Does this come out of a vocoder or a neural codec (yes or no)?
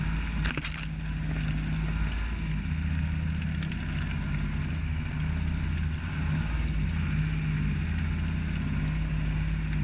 no